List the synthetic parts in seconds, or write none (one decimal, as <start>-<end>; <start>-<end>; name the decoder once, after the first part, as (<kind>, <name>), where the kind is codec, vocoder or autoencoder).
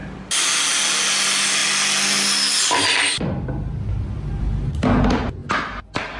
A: none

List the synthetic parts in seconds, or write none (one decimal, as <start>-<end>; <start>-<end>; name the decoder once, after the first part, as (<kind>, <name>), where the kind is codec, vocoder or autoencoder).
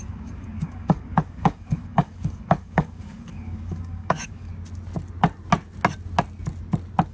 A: 0.0-4.5 (codec, DAC)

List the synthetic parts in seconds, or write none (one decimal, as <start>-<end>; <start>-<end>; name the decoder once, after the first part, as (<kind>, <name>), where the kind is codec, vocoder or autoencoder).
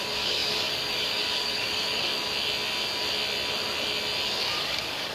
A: 0.0-2.1 (codec, DAC); 4.6-5.1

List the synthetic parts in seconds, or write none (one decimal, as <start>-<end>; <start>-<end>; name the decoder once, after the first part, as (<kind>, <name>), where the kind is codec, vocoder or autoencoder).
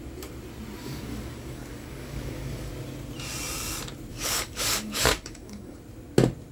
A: 0.8-2.7 (codec, DAC); 4.1-5.8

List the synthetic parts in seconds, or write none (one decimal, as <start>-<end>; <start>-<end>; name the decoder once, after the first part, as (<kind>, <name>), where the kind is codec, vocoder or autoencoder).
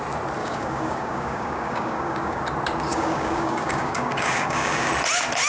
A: 0.4-2.4 (codec, DAC); 2.9-4.9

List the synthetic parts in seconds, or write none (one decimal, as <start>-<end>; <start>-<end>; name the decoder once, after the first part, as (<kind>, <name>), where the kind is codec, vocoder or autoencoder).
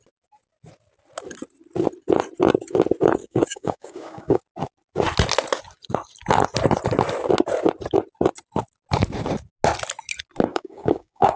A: 3.2-4.4 (codec, DAC); 10.5-11.4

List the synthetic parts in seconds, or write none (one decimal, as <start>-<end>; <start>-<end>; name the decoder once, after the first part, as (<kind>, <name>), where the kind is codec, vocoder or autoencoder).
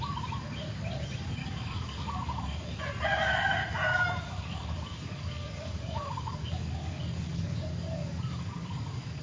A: 1.4-2.8 (codec, DAC); 3.9-9.2